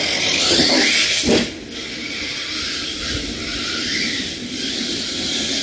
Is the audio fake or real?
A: fake